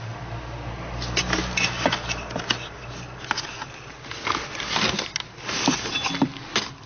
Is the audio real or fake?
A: real